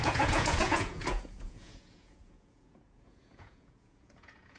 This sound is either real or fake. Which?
fake